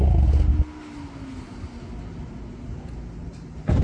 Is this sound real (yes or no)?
yes